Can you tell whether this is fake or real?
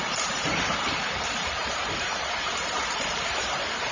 fake